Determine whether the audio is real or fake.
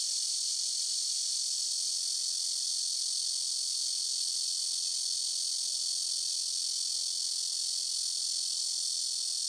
real